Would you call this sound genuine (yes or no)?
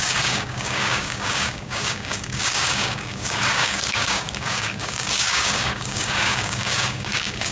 no